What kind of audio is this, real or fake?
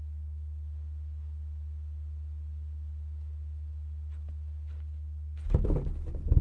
real